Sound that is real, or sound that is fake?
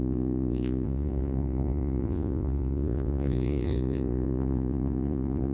fake